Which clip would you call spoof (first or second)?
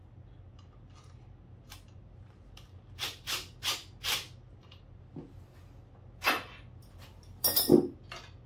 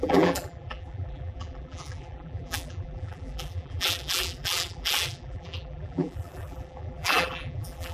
second